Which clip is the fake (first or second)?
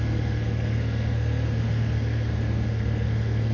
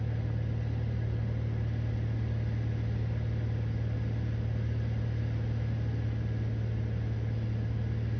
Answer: first